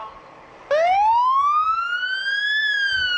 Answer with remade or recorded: recorded